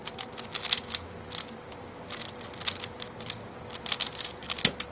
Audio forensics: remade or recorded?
recorded